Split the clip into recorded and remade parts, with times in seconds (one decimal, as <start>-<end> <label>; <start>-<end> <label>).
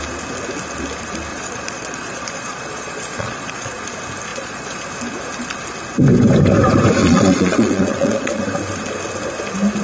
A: 0.0-1.3 recorded; 1.3-3.7 remade; 3.7-4.3 recorded; 4.3-4.8 remade; 4.8-7.0 recorded; 7.0-8.4 remade; 8.4-9.8 recorded